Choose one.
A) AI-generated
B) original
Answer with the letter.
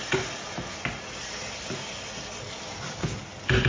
B